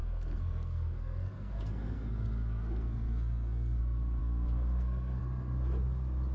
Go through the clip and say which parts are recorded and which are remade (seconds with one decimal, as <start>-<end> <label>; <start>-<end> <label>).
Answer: 0.0-3.8 remade; 3.8-4.2 recorded; 4.2-5.2 remade; 5.2-6.3 recorded